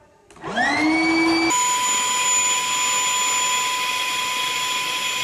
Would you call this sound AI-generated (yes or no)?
no